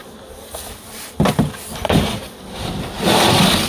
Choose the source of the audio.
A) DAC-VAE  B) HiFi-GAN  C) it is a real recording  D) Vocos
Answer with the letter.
C